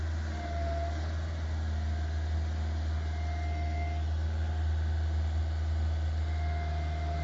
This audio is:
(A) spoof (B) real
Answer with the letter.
B